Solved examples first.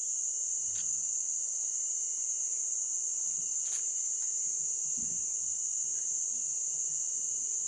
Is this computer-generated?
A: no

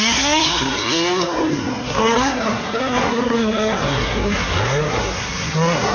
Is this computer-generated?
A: yes